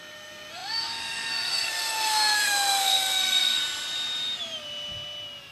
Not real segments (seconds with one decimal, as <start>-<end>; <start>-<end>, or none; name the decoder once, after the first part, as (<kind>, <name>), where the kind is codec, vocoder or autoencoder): 0.0-3.6 (codec, SNAC)